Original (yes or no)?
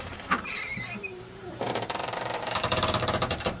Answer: no